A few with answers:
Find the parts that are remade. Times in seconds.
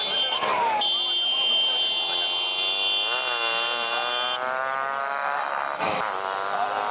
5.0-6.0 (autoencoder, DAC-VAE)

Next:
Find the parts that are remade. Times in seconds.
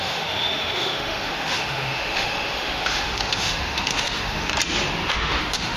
0.0-4.5 (autoencoder, DAC-VAE); 5.1-5.8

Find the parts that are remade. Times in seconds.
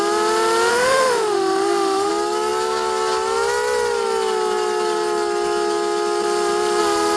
0.7-2.1 (autoencoder, DAC-VAE)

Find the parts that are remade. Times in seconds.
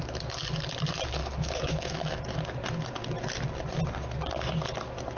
1.2-2.2 (autoencoder, DAC-VAE)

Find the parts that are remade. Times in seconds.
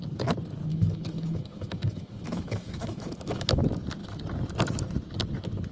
0.7-3.6 (autoencoder, DAC-VAE)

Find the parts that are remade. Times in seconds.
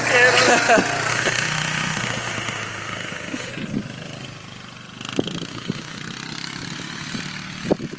1.1-3.5 (autoencoder, DAC-VAE); 5.5-6.0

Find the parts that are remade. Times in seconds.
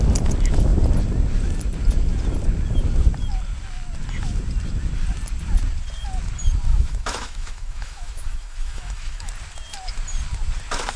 6.7-9.3 (autoencoder, DAC-VAE)